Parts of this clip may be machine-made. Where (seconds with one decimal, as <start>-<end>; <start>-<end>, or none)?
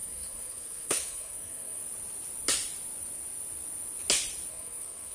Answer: 0.0-1.8; 4.5-5.1